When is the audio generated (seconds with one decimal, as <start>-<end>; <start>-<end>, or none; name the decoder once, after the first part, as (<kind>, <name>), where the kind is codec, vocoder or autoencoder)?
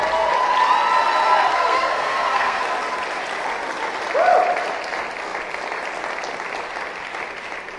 1.5-2.6 (codec, SNAC)